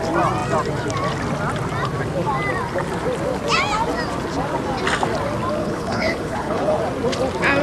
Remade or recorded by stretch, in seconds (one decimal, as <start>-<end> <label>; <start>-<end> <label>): 0.0-5.6 recorded; 5.6-6.8 remade; 6.8-7.6 recorded